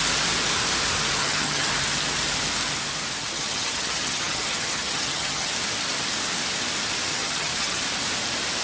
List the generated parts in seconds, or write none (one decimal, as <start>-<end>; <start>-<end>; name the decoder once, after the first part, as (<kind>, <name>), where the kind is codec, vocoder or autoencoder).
1.2-1.7 (vocoder, HiFi-GAN); 3.2-5.5; 7.1-7.8